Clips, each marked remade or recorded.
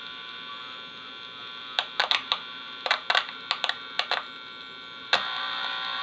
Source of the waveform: recorded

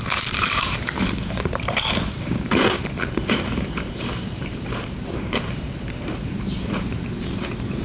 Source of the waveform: remade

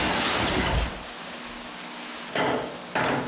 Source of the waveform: recorded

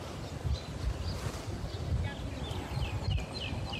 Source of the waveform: recorded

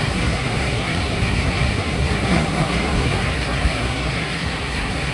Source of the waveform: remade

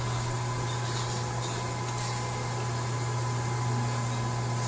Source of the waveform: recorded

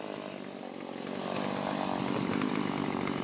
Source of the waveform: recorded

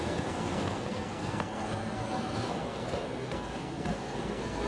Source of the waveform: remade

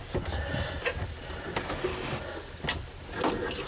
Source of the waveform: recorded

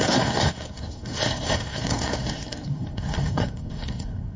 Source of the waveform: remade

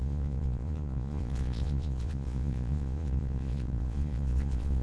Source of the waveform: remade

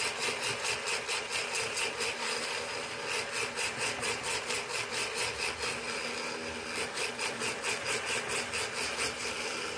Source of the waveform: recorded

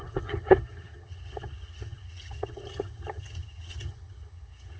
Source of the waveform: remade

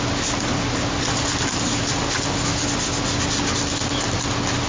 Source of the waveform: recorded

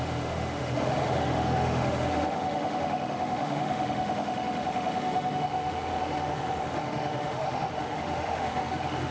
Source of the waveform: remade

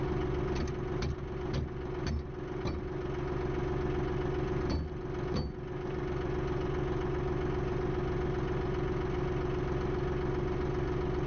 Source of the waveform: recorded